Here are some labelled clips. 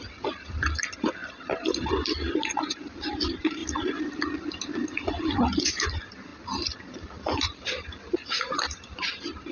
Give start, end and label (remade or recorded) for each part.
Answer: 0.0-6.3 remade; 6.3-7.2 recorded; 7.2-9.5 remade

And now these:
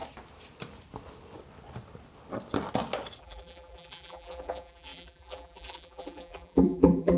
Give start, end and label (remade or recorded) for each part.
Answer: 0.0-3.2 recorded; 3.2-7.2 remade

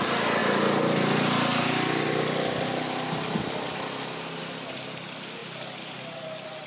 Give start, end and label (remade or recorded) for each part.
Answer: 0.0-6.7 recorded

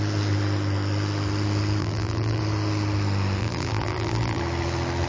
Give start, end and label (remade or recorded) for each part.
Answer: 0.0-1.8 recorded; 1.8-2.4 remade; 2.4-3.4 recorded; 3.4-4.4 remade; 4.4-5.1 recorded

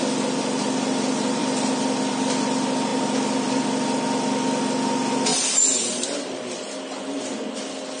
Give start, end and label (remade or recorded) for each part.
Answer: 0.0-5.3 recorded; 5.3-7.0 remade; 7.0-8.0 recorded

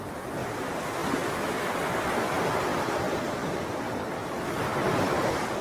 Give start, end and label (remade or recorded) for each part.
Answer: 0.0-1.0 remade; 1.0-4.3 recorded; 4.3-5.6 remade

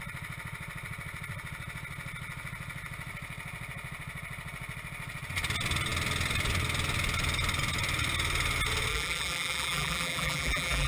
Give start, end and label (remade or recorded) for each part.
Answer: 0.0-8.9 recorded; 8.9-10.9 remade

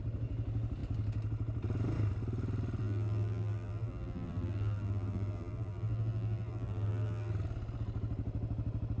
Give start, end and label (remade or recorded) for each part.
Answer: 0.0-2.8 recorded; 2.8-7.3 remade; 7.3-9.0 recorded